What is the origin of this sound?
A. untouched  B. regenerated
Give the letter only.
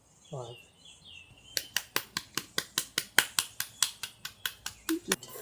A